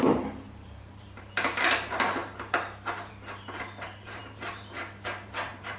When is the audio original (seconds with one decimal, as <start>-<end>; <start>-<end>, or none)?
2.2-3.1